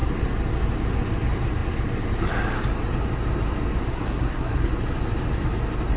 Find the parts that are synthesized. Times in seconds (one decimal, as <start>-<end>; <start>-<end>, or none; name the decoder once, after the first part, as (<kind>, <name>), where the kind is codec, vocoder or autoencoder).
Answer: 3.9-4.7 (codec, SNAC)